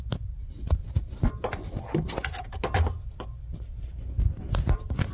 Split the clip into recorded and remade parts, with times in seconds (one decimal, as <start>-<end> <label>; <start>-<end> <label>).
0.0-5.1 recorded